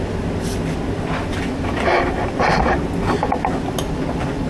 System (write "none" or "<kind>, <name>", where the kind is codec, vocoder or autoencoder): none